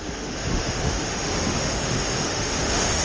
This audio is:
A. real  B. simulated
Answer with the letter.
B